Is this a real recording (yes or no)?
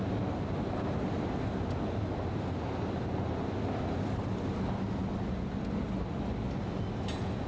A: yes